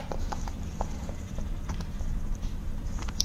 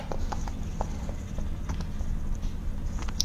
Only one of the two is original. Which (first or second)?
second